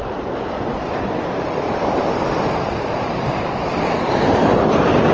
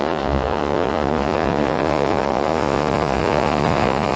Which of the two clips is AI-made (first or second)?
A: second